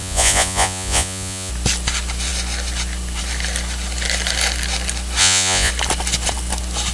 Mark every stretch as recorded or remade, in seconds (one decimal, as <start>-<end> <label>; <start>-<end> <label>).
0.0-1.5 remade; 1.5-5.2 recorded; 5.2-5.7 remade; 5.7-6.9 recorded